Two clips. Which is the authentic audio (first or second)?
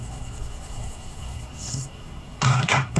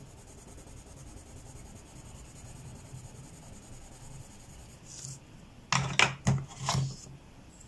second